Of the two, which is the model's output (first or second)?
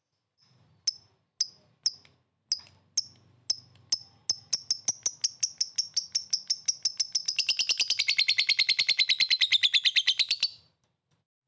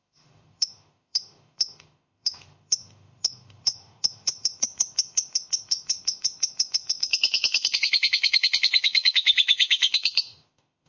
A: second